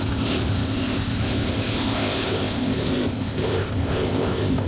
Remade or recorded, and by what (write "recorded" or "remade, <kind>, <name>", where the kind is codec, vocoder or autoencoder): remade, codec, ZipCodec